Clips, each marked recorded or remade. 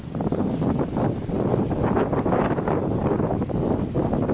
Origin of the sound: recorded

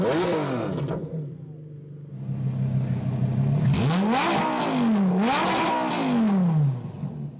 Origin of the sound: recorded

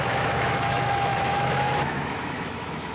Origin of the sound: remade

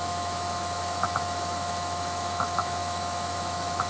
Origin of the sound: remade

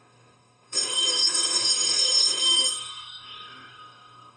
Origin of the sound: remade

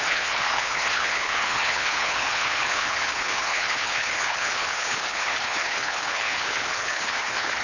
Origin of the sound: remade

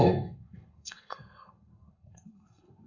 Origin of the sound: remade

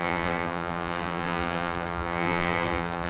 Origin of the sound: remade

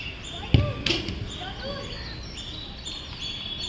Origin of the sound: recorded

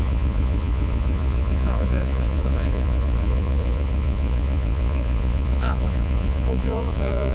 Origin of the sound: remade